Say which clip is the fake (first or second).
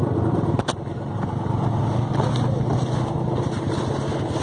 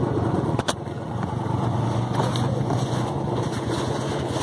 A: second